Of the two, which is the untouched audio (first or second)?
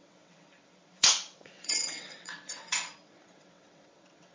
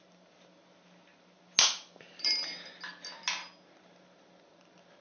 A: second